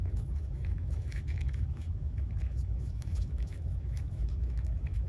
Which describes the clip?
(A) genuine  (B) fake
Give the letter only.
B